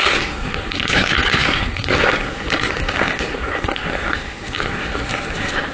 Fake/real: fake